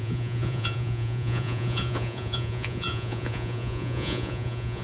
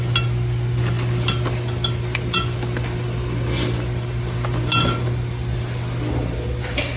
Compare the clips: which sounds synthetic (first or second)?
first